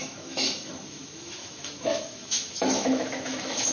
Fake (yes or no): yes